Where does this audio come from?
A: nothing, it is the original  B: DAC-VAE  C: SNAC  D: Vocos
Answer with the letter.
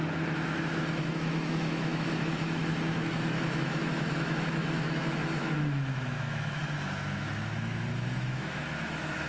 B